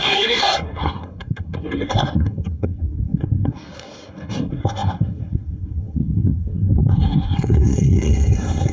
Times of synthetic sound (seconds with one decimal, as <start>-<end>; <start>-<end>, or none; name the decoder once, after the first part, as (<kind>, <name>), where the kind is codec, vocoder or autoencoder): 0.0-8.7 (codec, SNAC)